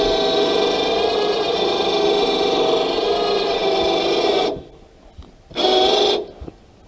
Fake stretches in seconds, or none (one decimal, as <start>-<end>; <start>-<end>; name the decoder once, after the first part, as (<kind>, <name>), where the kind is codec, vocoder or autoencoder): none